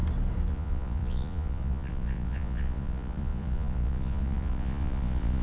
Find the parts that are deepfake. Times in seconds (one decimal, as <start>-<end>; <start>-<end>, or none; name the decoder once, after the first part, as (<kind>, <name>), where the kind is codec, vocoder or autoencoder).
0.5-5.4 (vocoder, Vocos)